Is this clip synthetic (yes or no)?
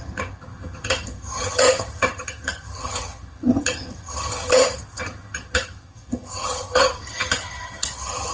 yes